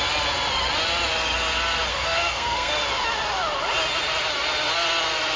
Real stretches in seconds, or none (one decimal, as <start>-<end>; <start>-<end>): 0.0-1.9; 2.7-5.4